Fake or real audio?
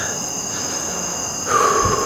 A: real